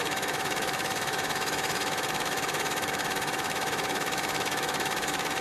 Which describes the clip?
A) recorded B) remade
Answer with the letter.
B